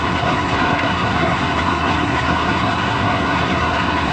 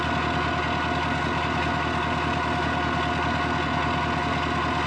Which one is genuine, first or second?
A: second